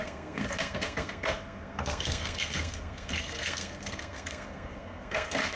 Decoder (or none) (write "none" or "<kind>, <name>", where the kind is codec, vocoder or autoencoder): codec, SNAC